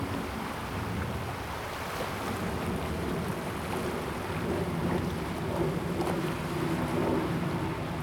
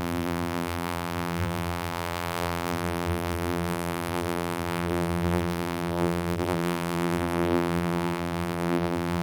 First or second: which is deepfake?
second